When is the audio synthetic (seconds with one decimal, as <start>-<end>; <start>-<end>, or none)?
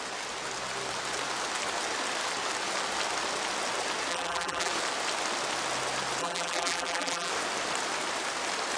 4.1-4.7; 6.2-7.3